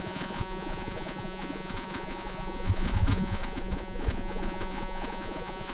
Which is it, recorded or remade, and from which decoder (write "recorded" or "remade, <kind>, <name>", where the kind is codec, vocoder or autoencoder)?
remade, vocoder, Vocos